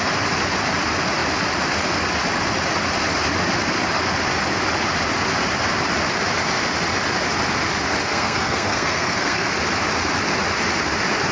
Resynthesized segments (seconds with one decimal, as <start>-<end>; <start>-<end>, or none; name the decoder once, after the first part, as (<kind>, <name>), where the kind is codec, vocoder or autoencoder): 8.0-9.5 (codec, SNAC)